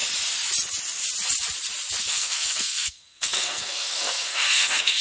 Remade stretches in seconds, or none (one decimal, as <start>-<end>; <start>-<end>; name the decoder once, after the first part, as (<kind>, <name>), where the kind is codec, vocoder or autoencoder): 2.0-5.0 (codec, SNAC)